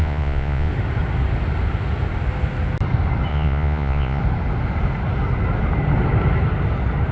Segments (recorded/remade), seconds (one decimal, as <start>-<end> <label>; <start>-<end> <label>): 0.0-0.7 remade; 0.7-3.3 recorded; 3.3-4.2 remade; 4.2-7.1 recorded